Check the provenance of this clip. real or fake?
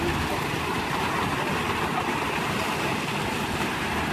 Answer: real